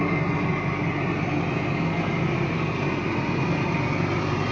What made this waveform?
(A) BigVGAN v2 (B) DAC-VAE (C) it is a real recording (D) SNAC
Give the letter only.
C